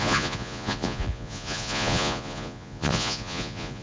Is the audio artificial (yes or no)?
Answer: yes